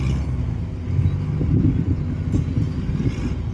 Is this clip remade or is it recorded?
recorded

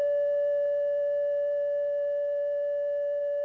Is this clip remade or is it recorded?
recorded